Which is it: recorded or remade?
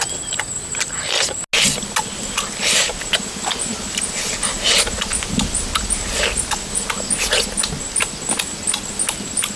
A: recorded